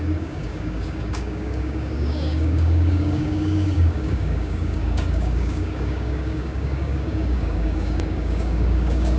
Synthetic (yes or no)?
yes